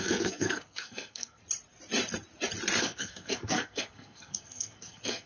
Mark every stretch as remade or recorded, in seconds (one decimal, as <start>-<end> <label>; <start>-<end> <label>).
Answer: 0.0-1.4 remade; 1.4-2.8 recorded; 2.8-5.3 remade